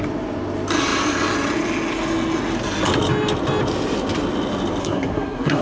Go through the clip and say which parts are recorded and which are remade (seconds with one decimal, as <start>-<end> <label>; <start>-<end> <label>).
0.0-4.8 recorded; 4.8-5.6 remade